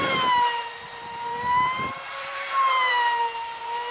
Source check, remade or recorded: remade